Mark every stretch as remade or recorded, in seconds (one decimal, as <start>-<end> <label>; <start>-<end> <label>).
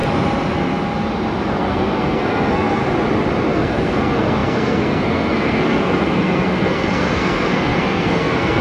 0.0-1.5 recorded; 1.5-2.8 remade; 2.8-3.5 recorded; 3.5-8.6 remade